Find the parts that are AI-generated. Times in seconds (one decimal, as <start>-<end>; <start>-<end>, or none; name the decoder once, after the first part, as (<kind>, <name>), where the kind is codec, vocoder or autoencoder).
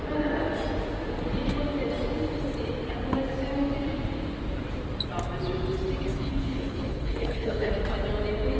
6.1-7.7 (codec, HILCodec)